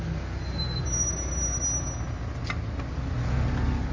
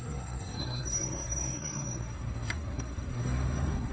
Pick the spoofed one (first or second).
second